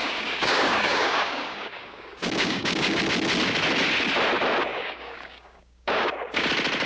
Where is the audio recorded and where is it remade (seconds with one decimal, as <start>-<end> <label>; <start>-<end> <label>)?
0.0-3.0 remade; 3.0-4.7 recorded; 4.7-6.5 remade; 6.5-6.9 recorded